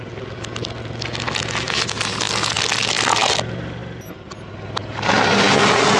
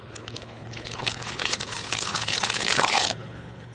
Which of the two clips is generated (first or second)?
second